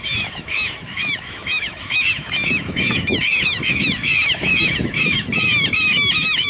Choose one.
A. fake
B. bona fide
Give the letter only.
A